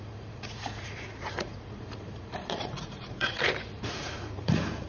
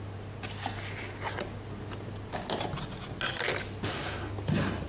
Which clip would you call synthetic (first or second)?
first